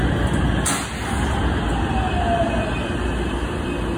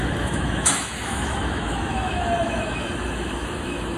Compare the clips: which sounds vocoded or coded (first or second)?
second